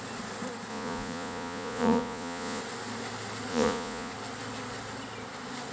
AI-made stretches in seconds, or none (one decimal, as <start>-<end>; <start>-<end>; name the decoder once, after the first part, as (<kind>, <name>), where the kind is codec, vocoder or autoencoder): 0.7-2.6 (vocoder, Vocos); 3.5-4.1